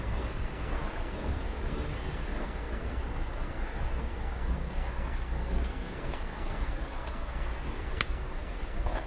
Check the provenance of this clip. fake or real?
fake